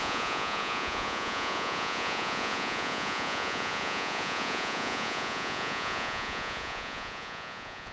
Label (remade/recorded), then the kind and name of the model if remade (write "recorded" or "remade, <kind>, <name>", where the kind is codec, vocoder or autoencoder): remade, vocoder, Vocos